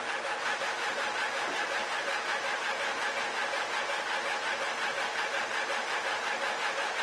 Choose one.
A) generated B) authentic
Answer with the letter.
A